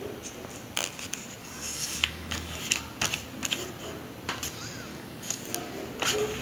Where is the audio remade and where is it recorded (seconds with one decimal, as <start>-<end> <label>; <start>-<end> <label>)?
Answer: 0.0-1.4 recorded; 1.4-2.6 remade; 2.6-4.9 recorded; 4.9-5.4 remade; 5.4-6.4 recorded